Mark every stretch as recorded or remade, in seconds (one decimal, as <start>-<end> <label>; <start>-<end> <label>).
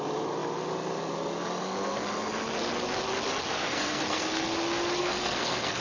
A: 0.0-3.5 recorded; 3.5-4.5 remade; 4.5-5.0 recorded; 5.0-5.8 remade